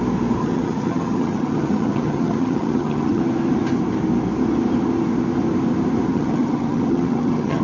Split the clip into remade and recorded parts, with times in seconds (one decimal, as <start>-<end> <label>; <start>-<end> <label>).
0.0-0.4 recorded; 0.4-3.2 remade; 3.2-6.1 recorded; 6.1-7.6 remade